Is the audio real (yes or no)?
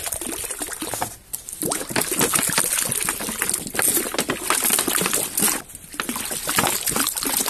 yes